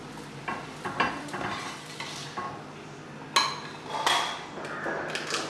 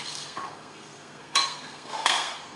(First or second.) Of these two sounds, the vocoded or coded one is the second